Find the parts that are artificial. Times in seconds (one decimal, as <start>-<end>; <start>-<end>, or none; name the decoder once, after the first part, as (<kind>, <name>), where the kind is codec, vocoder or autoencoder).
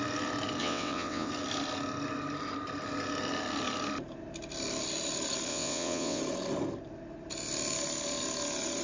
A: 0.6-1.3 (vocoder, WaveNeXt); 5.5-6.2